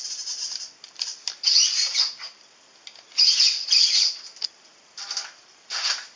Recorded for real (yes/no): yes